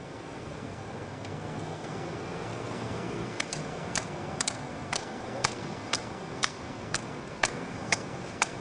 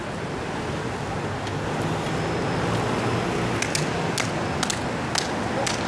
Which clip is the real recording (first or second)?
second